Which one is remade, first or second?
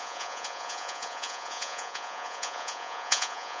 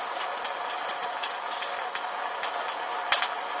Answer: first